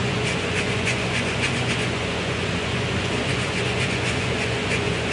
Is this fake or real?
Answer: fake